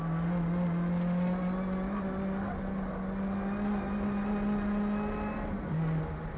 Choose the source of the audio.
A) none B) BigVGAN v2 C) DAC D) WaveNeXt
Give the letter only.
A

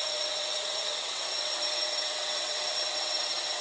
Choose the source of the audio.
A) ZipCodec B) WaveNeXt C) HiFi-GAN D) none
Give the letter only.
B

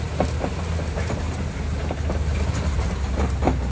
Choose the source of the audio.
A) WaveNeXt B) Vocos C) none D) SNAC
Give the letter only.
C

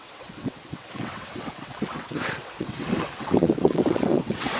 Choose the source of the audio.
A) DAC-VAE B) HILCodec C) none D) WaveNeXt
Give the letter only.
D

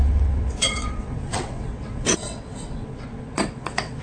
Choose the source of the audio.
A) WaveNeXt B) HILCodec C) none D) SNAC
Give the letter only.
A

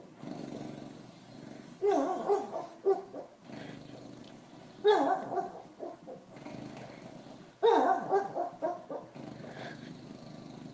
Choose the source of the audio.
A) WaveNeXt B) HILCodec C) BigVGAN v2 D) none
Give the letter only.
D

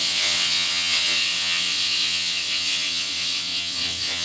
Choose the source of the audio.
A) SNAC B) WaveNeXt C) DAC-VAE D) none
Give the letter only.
B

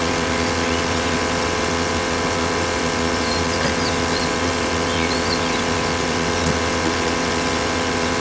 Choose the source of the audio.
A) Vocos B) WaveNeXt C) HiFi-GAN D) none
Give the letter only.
B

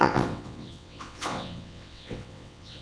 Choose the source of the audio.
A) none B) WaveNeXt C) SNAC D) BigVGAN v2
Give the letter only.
B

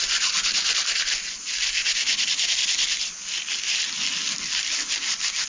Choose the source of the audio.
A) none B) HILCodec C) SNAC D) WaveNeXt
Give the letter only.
A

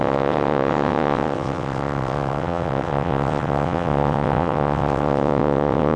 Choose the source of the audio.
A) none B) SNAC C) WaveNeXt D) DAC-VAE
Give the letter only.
C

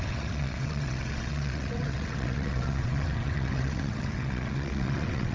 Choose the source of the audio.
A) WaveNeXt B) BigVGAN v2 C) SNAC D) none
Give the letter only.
A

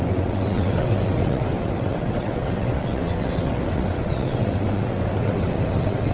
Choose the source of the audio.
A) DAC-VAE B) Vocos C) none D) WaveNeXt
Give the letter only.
D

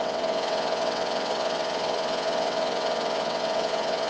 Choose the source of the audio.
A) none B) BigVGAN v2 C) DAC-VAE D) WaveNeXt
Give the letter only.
D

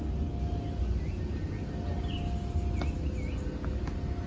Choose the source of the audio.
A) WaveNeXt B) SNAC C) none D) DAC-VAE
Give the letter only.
C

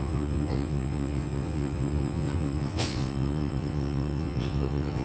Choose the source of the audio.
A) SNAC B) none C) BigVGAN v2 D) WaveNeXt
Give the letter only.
D